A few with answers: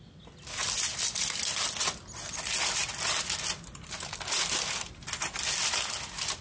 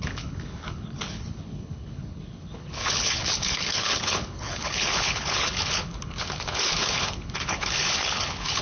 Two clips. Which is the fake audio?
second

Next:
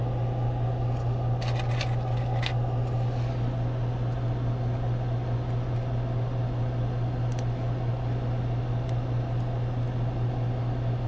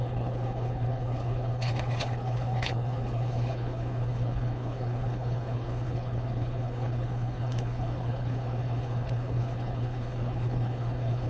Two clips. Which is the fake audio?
second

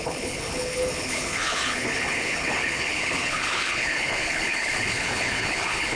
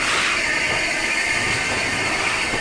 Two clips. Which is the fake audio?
first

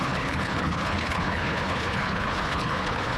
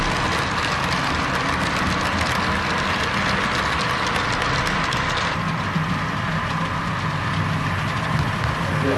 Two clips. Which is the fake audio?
first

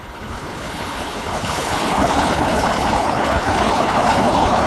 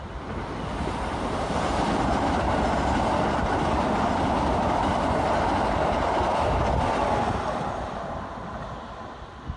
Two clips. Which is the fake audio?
first